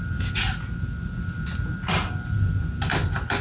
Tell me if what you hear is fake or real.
real